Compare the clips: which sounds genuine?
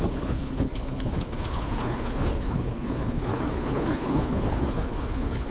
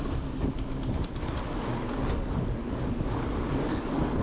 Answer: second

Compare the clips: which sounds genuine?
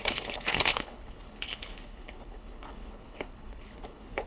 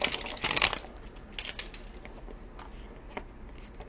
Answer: second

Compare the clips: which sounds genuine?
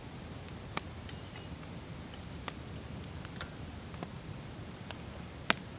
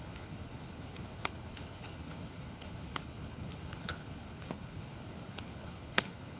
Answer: first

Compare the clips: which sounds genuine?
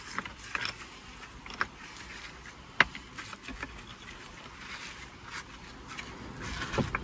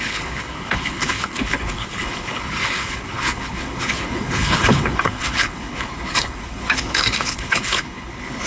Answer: first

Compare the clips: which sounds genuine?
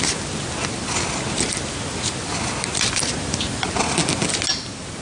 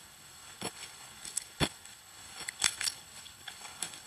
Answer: first